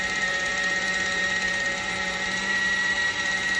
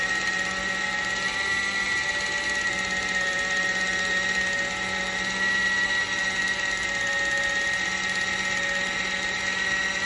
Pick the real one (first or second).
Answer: second